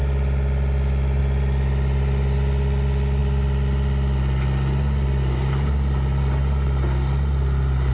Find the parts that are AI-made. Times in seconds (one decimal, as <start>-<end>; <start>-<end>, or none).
none